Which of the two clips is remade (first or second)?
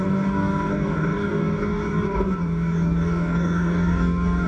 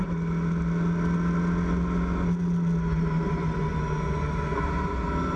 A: first